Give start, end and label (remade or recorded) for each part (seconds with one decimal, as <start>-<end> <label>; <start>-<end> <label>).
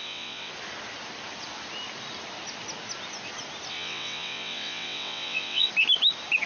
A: 0.0-0.5 remade; 0.5-3.7 recorded; 3.7-5.7 remade; 5.7-6.5 recorded